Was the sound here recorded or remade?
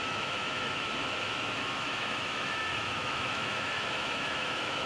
remade